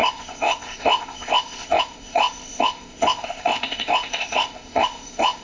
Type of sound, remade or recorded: remade